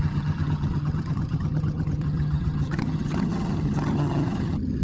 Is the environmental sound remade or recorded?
remade